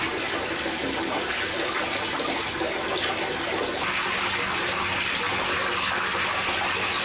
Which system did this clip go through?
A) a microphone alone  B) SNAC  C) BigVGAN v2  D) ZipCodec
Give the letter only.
A